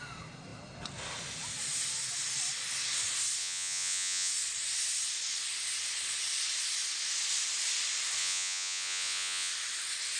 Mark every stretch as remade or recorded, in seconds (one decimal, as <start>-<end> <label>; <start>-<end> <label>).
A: 0.0-3.4 recorded; 3.4-4.3 remade; 4.3-8.2 recorded; 8.2-9.5 remade; 9.5-10.2 recorded